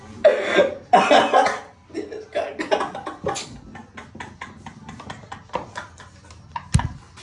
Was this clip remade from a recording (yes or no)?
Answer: no